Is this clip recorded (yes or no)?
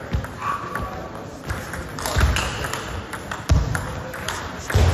yes